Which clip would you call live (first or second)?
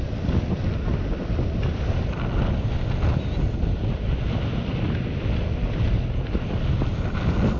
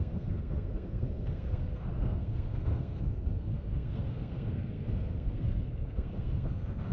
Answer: first